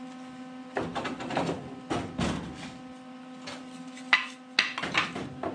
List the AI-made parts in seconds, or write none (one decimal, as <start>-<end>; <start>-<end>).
none